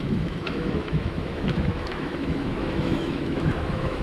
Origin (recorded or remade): remade